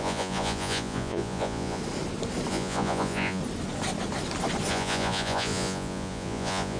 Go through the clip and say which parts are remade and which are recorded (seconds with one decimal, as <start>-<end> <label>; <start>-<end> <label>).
0.0-1.8 remade; 1.8-2.5 recorded; 2.5-3.4 remade; 3.4-4.7 recorded; 4.7-6.8 remade